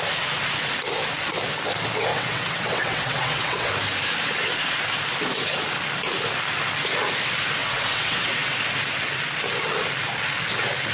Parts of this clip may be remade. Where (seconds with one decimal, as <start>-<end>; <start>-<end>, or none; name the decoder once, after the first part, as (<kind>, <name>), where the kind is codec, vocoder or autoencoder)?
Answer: 2.1-3.7 (vocoder, WaveNeXt); 7.6-8.5